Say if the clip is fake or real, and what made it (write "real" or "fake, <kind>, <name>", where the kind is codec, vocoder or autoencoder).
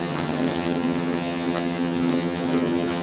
fake, vocoder, HiFi-GAN